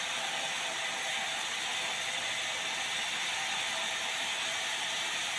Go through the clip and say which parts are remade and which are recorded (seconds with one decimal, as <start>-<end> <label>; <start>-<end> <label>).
0.0-5.4 recorded